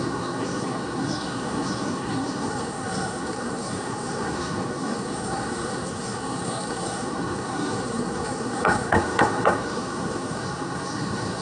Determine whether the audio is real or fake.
fake